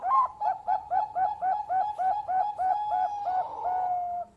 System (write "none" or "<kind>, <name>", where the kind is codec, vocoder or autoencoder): vocoder, BigVGAN v2